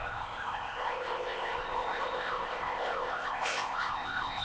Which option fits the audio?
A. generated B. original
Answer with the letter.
A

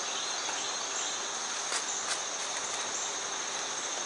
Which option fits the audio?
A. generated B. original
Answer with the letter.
B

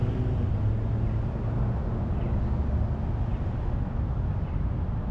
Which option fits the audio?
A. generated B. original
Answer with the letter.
B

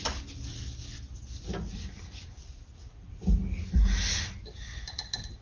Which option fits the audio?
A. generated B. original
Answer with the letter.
B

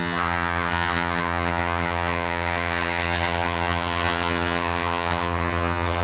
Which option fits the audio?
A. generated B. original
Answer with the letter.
A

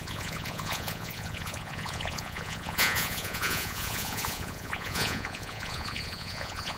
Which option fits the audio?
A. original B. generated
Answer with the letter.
B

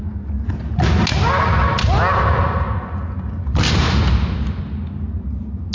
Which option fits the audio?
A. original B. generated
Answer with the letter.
A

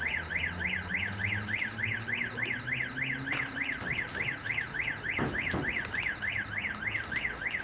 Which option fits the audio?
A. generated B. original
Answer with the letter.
B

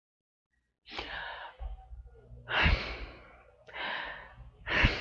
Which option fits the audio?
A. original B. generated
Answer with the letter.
A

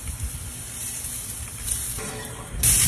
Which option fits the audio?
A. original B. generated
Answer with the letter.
B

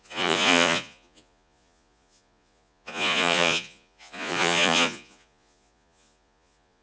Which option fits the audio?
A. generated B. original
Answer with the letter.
A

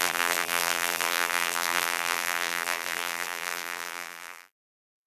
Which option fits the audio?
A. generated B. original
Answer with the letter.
A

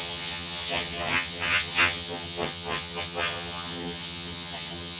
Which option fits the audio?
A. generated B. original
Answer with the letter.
A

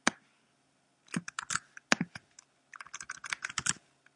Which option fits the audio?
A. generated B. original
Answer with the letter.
B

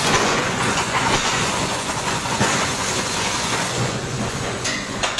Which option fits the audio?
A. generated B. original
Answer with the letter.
A